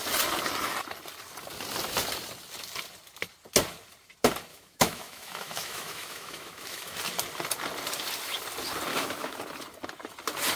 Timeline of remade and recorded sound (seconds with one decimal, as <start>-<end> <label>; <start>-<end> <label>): 0.0-4.5 recorded; 4.5-7.0 remade; 7.0-8.9 recorded; 8.9-9.4 remade; 9.4-10.6 recorded